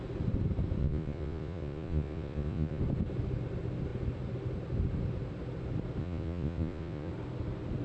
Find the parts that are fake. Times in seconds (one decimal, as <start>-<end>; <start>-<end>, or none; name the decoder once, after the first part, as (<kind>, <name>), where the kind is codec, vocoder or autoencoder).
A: 0.8-2.8 (vocoder, Vocos); 6.0-7.1